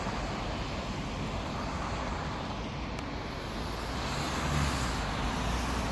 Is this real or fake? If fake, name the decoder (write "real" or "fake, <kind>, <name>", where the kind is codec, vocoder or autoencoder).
real